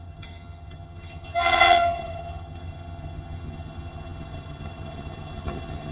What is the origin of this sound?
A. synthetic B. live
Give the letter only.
A